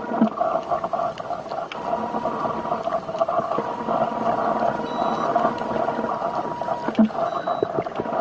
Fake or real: real